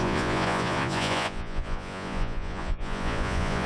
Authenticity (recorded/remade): remade